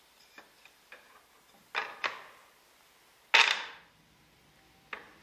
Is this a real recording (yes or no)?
yes